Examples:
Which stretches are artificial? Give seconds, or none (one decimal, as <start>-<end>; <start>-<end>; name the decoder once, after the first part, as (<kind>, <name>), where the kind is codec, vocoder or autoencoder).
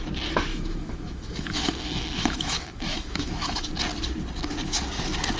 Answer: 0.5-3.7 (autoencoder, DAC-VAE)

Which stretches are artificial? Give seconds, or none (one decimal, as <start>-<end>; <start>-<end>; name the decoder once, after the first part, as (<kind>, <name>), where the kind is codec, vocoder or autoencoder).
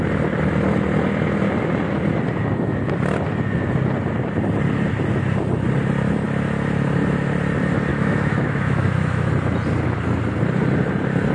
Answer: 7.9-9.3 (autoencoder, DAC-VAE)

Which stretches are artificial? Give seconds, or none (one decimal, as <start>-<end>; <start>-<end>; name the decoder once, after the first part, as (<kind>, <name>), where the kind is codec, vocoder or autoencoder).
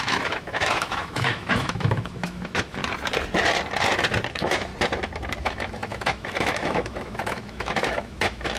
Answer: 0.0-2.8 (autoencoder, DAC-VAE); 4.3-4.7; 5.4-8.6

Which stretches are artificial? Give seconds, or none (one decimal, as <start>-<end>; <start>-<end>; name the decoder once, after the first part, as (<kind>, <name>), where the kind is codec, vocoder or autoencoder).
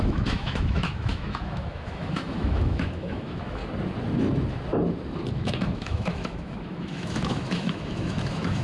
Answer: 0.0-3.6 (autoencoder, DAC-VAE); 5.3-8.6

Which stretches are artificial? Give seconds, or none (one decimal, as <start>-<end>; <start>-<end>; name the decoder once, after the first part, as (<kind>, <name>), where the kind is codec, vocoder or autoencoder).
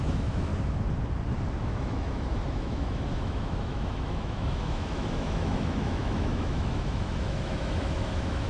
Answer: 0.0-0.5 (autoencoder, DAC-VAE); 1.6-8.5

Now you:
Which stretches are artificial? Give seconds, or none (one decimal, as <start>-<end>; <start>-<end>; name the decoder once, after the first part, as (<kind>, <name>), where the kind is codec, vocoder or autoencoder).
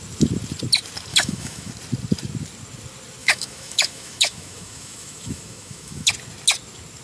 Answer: 1.1-1.7 (autoencoder, DAC-VAE); 3.2-6.1